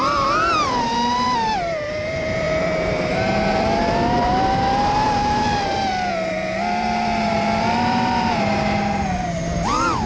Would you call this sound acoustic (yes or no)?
no